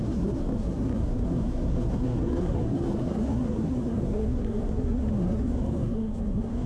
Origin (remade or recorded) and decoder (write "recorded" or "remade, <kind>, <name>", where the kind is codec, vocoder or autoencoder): remade, codec, SNAC